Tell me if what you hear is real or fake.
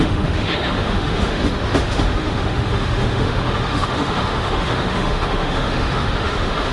fake